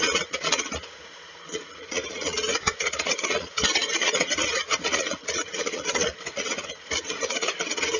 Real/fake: fake